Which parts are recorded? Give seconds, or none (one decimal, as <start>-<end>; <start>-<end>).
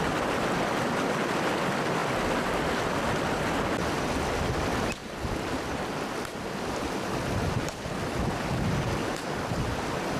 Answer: 0.0-10.2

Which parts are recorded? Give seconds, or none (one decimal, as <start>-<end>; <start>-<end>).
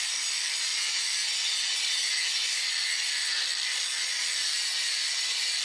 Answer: 0.7-1.8; 3.5-4.8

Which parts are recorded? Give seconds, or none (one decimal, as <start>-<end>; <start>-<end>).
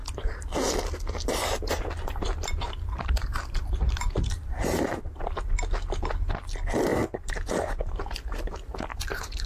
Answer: 0.0-2.2; 5.3-6.9; 8.1-8.9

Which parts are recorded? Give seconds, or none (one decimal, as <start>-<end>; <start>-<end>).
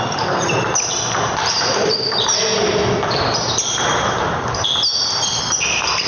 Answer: 2.8-5.6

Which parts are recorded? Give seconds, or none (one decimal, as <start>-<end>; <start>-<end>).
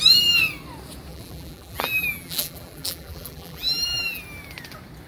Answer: 0.0-1.1; 4.2-5.1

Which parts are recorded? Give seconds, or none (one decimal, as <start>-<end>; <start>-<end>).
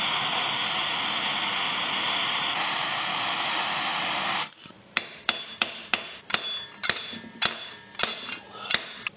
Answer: 0.0-9.2